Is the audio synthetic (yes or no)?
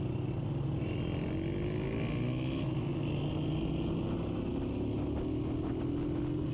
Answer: no